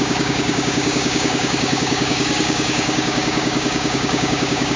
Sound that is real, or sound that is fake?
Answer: fake